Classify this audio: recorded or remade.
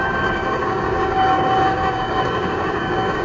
remade